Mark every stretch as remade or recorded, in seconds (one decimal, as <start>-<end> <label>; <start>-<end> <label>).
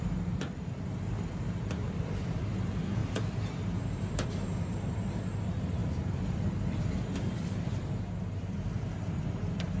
0.0-9.8 remade